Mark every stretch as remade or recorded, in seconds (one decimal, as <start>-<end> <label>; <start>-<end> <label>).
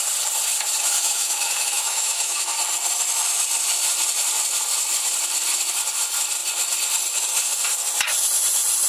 0.0-0.9 recorded; 0.9-2.6 remade; 2.6-8.9 recorded